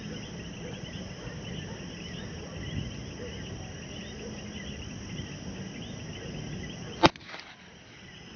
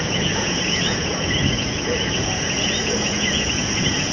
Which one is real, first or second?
first